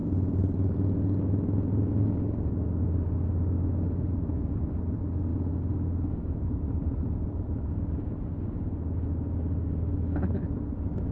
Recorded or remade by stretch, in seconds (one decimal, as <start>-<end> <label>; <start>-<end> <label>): 0.0-11.1 recorded